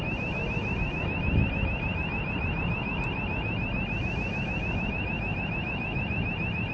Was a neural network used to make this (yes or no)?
yes